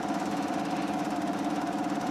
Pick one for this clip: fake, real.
real